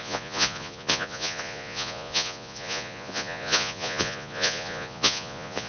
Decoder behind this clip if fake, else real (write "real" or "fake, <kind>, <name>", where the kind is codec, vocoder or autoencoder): fake, vocoder, Vocos